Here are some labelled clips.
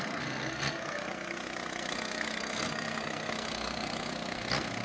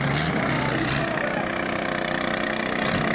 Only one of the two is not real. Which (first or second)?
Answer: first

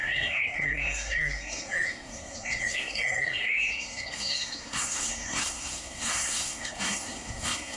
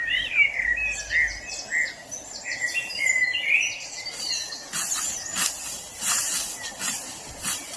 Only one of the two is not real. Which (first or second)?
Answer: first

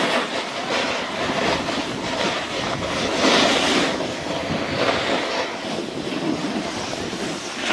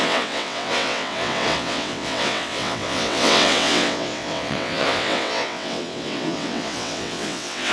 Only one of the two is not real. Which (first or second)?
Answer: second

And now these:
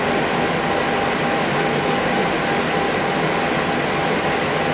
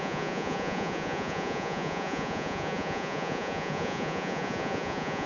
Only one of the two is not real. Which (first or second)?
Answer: second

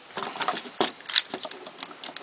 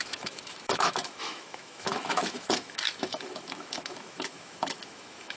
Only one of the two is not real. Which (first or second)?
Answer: second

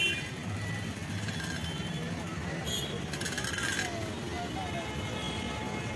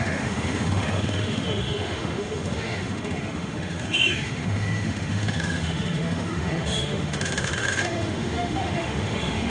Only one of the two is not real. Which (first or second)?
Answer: second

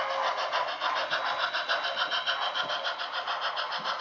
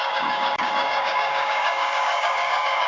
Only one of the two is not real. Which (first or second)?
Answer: second